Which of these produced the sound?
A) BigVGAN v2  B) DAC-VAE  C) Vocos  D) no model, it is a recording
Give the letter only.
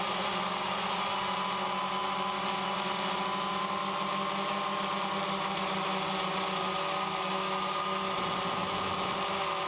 D